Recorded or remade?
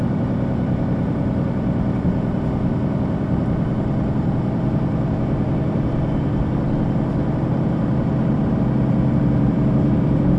remade